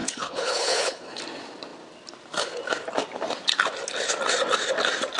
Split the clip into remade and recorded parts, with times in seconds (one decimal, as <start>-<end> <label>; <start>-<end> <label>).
0.0-1.2 remade; 1.2-5.2 recorded

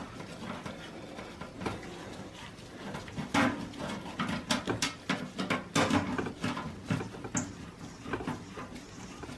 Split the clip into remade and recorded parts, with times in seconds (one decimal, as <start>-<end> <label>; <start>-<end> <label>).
0.0-9.4 recorded

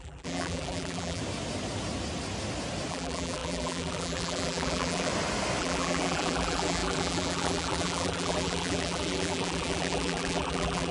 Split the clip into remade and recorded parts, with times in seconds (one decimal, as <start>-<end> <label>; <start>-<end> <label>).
0.0-1.2 remade; 1.2-2.9 recorded; 2.9-5.1 remade; 5.1-5.6 recorded; 5.6-10.9 remade

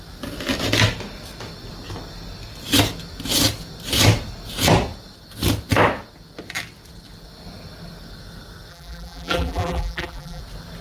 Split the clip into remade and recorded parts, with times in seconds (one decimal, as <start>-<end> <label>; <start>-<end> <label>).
0.0-8.7 recorded; 8.7-10.4 remade; 10.4-10.8 recorded

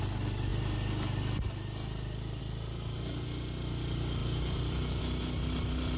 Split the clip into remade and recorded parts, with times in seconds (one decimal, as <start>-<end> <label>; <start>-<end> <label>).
0.0-6.0 recorded

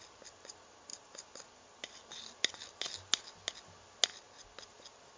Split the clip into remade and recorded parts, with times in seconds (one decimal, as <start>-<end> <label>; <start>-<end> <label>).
0.0-4.1 recorded; 4.1-4.6 remade; 4.6-5.2 recorded

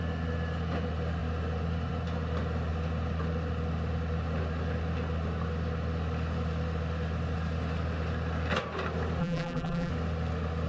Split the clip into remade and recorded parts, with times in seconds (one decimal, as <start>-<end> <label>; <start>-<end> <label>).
0.0-9.2 recorded; 9.2-9.9 remade; 9.9-10.7 recorded